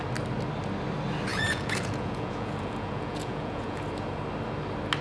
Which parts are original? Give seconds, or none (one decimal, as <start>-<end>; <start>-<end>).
0.0-1.3; 3.8-5.0